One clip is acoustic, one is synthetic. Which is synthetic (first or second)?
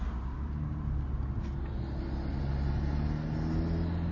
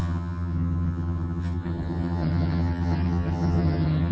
second